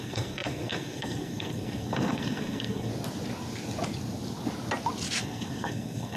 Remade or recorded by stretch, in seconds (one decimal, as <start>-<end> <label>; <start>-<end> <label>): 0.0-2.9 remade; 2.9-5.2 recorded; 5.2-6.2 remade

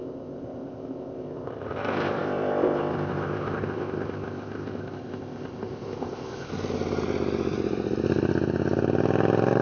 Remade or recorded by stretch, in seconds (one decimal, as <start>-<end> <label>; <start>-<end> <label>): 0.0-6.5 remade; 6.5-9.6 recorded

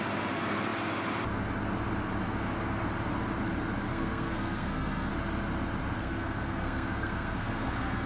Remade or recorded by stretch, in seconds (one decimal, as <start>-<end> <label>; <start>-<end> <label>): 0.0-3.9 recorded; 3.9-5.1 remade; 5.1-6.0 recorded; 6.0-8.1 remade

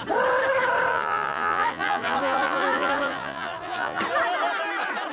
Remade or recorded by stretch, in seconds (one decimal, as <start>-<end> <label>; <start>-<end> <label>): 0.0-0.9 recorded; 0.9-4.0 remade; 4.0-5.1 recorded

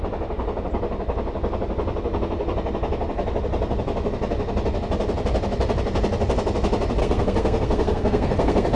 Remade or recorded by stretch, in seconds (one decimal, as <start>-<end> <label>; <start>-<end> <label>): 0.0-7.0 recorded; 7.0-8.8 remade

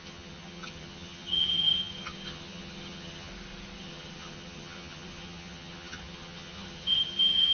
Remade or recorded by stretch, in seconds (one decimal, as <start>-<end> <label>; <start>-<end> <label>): 0.0-3.3 remade; 3.3-3.8 recorded; 3.8-7.5 remade